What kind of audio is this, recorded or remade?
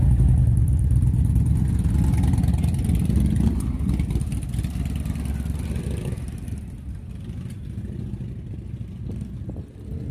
recorded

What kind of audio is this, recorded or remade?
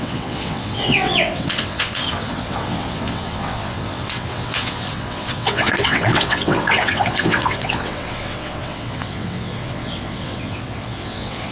remade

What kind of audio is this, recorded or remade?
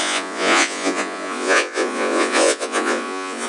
remade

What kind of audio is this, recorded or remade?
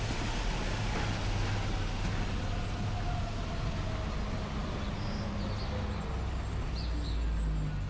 recorded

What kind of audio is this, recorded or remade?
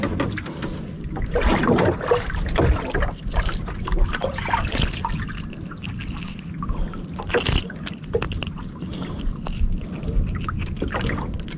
recorded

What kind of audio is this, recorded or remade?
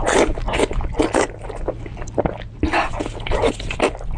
recorded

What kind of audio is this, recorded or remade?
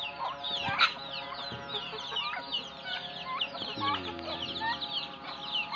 recorded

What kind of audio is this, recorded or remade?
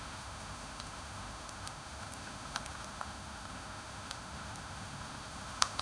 remade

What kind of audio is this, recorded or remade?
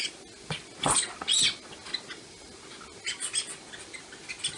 recorded